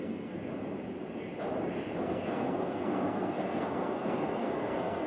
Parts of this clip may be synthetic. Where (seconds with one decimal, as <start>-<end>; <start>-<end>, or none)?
0.0-0.4; 2.0-5.1

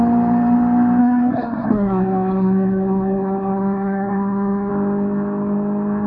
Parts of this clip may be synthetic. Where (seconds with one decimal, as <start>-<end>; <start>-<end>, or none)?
1.0-4.7

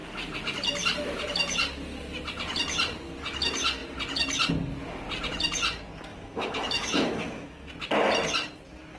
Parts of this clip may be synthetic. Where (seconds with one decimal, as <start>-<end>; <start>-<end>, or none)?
6.1-7.7

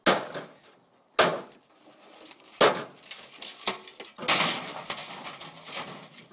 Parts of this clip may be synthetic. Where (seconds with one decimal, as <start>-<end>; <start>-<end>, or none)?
none

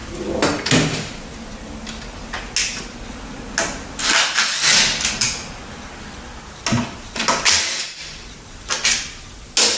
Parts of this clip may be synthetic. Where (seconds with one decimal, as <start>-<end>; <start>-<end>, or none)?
none